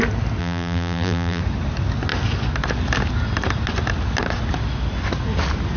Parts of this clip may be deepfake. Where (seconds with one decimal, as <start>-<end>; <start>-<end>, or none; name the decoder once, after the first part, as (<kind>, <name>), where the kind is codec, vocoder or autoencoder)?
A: 0.4-1.4 (vocoder, BigVGAN v2)